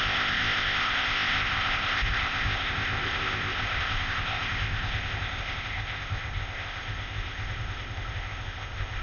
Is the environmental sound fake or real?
fake